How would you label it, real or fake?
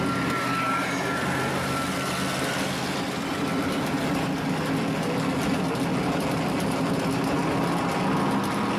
real